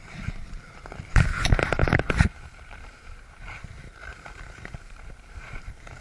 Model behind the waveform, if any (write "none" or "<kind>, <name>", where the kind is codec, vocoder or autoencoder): vocoder, BigVGAN v2